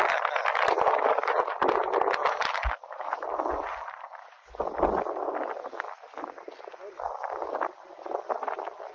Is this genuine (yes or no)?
yes